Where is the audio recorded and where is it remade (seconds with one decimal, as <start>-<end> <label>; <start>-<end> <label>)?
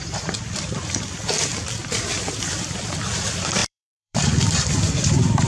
0.0-5.5 remade